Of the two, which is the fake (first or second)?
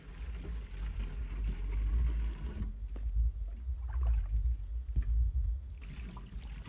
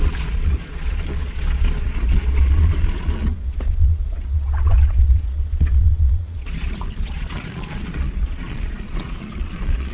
second